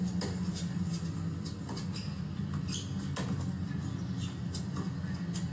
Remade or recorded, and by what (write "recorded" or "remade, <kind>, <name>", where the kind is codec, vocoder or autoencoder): recorded